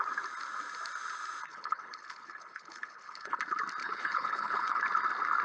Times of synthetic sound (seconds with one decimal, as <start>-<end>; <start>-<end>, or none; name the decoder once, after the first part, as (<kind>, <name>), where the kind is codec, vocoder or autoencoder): 1.5-3.4 (codec, HILCodec); 3.8-4.8